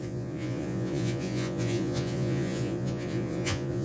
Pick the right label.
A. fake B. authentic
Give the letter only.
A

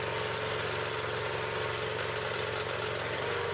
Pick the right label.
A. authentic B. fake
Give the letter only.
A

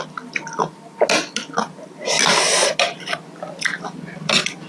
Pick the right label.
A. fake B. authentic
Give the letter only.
B